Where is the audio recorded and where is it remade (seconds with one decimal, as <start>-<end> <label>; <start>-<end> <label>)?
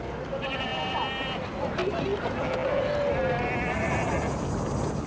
0.0-5.1 recorded